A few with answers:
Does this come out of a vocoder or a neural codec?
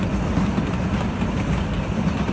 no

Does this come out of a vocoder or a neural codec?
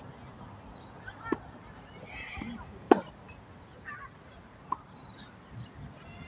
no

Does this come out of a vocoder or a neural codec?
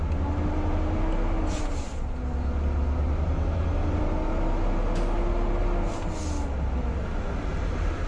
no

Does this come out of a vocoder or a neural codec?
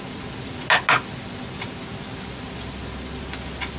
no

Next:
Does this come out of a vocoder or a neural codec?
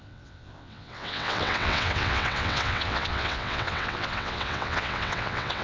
yes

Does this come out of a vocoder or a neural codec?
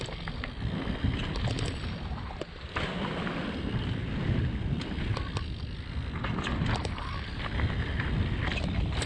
no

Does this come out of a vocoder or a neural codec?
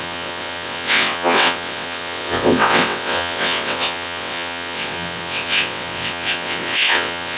yes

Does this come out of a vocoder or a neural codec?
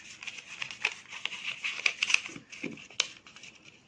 no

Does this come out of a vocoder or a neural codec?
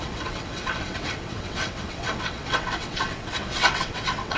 yes